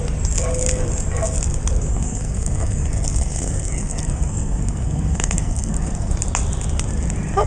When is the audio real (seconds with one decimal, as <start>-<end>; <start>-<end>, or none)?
0.0-1.9; 6.1-7.5